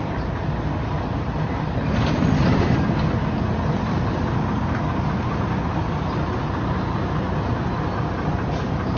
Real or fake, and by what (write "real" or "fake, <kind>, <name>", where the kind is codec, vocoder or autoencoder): real